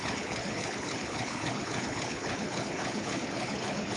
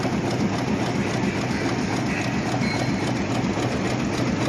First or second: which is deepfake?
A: first